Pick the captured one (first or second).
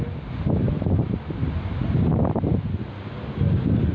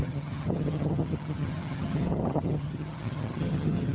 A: first